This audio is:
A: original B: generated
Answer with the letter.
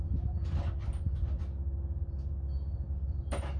A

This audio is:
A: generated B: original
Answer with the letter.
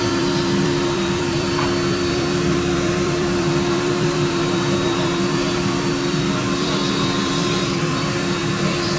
A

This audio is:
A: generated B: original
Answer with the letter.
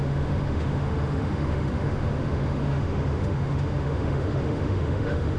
A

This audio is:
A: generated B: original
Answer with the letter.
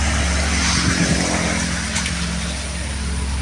B